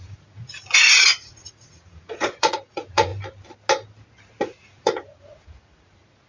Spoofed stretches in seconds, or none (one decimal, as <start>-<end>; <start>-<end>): 0.0-3.1; 4.4-6.3